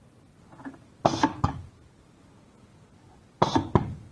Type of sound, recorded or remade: recorded